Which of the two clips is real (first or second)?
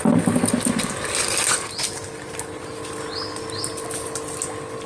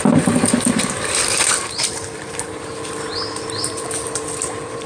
first